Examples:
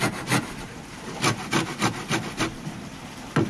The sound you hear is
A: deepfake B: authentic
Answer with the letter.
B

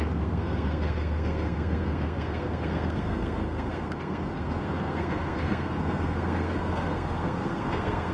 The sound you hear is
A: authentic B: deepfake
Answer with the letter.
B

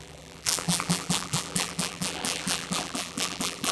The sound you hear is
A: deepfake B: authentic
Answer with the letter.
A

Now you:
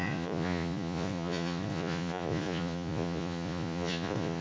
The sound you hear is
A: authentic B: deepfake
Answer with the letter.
B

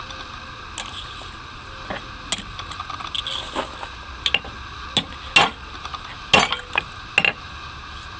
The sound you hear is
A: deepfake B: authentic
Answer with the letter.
B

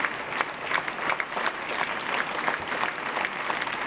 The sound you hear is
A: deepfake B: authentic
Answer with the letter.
B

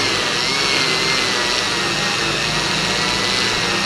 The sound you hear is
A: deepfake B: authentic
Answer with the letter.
B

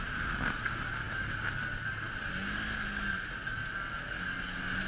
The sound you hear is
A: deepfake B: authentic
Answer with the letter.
B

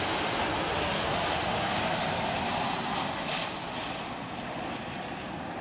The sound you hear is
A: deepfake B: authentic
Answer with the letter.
B